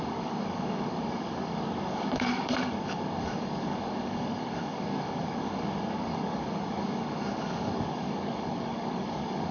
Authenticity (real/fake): fake